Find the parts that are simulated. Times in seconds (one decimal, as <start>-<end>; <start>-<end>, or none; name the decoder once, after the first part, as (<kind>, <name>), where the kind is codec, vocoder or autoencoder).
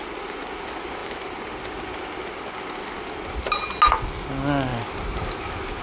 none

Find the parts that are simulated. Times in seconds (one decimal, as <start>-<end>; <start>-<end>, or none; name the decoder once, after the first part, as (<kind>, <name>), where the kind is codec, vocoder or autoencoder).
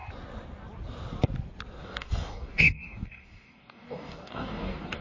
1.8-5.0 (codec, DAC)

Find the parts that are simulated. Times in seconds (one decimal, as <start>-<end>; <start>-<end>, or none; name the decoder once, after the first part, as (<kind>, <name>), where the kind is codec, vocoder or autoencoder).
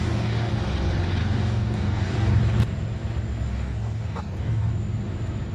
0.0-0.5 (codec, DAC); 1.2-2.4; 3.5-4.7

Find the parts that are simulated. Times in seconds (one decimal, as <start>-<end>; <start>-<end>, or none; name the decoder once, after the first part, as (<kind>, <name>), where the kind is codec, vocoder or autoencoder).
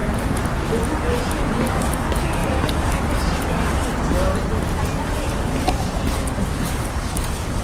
0.9-4.3 (codec, DAC); 5.0-7.6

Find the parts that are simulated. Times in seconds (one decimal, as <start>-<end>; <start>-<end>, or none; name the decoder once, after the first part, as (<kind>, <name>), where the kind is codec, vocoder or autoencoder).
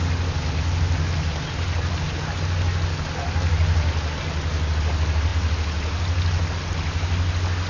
none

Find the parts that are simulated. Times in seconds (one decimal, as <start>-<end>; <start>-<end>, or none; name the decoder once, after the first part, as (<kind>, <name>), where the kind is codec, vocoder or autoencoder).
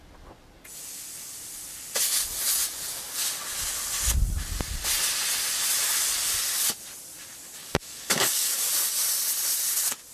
7.6-8.7 (codec, DAC)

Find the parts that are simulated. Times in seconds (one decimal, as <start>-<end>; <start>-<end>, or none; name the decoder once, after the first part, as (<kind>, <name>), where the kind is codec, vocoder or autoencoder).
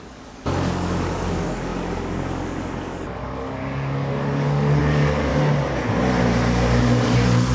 0.0-5.3 (codec, DAC); 6.8-7.5